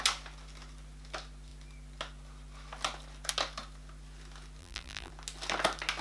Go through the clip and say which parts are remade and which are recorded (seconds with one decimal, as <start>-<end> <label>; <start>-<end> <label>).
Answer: 0.0-4.6 recorded; 4.6-5.1 remade; 5.1-6.0 recorded